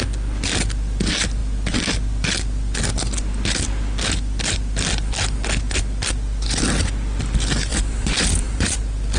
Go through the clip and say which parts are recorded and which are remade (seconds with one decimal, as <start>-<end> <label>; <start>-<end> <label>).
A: 0.0-7.7 recorded; 7.7-9.2 remade